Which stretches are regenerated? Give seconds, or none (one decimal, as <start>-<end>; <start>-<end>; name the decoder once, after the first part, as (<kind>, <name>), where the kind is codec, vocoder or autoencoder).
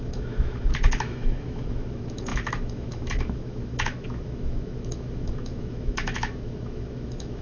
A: 0.0-7.4 (autoencoder, DAC-VAE)